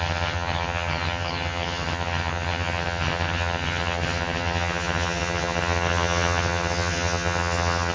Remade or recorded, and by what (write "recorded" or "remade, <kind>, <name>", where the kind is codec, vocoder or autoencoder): remade, vocoder, HiFi-GAN